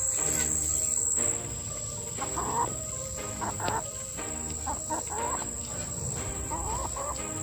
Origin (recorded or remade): recorded